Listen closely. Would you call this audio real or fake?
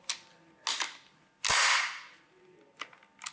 real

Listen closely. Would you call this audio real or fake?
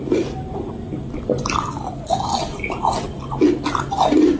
real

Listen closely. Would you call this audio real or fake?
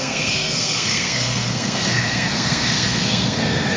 fake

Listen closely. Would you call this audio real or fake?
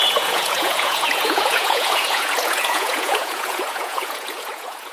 fake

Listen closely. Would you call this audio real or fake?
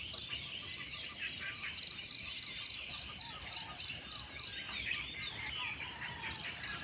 fake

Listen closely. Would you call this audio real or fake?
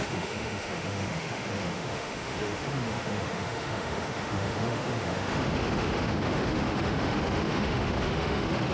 fake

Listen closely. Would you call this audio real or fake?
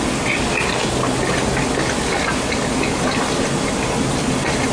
real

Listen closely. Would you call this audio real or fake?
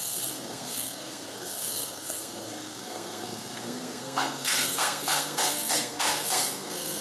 fake